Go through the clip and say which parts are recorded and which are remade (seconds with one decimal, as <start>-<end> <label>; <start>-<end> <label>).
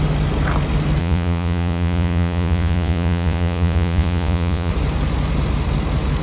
0.0-1.0 recorded; 1.0-4.7 remade; 4.7-6.2 recorded